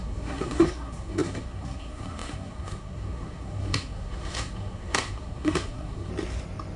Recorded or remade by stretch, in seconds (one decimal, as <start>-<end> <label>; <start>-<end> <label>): 0.0-6.1 remade; 6.1-6.8 recorded